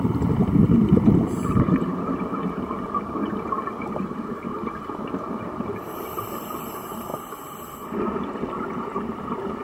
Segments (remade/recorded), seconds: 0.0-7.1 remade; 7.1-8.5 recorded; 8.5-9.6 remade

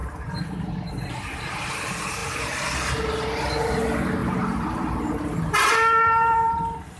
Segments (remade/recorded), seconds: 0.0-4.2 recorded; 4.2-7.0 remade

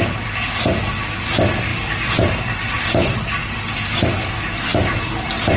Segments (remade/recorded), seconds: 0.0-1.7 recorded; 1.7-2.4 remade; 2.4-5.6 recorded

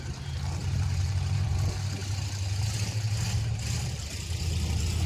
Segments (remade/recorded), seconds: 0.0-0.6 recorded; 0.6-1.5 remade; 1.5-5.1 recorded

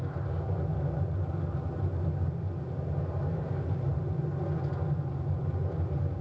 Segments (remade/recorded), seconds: 0.0-6.2 recorded